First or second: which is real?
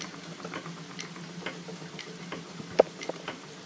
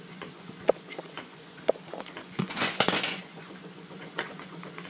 first